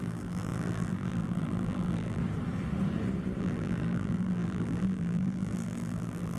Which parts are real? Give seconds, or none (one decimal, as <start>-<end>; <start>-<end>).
2.2-3.4